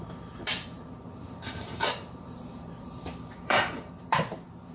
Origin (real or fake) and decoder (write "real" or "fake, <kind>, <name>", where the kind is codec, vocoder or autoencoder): fake, vocoder, BigVGAN v2